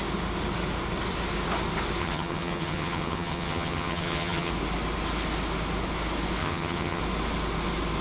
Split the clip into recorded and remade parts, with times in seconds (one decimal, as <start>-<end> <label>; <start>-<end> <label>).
0.0-2.0 recorded; 2.0-4.5 remade; 4.5-6.4 recorded; 6.4-7.0 remade; 7.0-8.0 recorded